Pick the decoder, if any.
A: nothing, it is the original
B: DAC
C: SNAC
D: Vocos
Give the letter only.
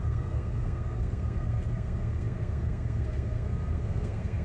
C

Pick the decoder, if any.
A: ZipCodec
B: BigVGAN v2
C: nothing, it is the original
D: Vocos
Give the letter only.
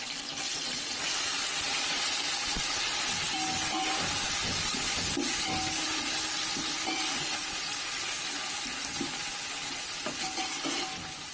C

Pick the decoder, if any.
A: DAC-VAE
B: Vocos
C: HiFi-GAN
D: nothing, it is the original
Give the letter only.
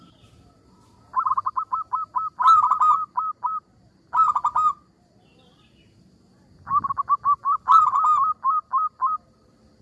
D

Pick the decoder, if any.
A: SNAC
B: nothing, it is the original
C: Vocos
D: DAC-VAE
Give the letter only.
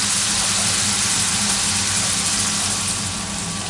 B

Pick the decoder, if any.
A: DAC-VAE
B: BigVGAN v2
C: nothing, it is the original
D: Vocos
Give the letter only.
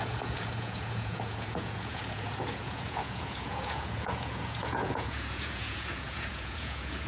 D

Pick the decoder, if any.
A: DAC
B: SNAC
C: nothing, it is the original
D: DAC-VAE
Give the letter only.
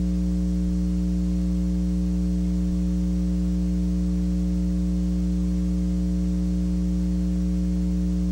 C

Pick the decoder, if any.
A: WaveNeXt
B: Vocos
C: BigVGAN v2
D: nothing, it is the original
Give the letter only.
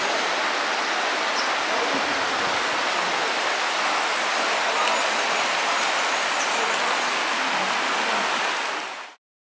D